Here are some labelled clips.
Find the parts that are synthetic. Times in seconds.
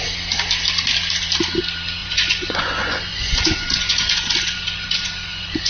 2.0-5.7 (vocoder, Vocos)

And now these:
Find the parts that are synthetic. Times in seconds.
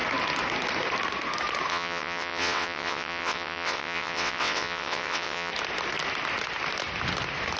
1.7-5.5 (vocoder, WaveNeXt)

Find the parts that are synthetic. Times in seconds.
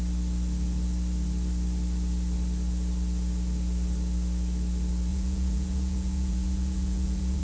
5.1-7.4 (vocoder, Vocos)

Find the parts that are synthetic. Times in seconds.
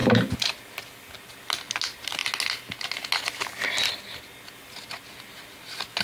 none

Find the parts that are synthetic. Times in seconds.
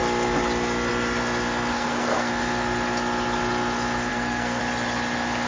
1.7-2.3 (codec, SNAC); 4.1-4.6